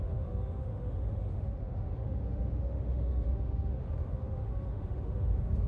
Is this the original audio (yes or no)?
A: no